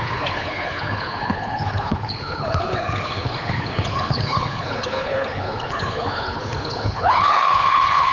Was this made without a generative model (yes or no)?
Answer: no